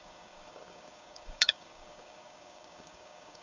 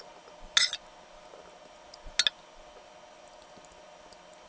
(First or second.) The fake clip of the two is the first